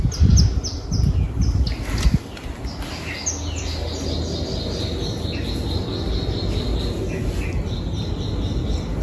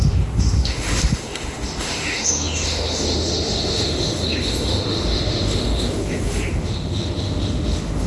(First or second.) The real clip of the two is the first